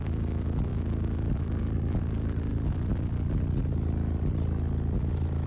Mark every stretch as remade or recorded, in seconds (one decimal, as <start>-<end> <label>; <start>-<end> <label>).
0.0-5.5 recorded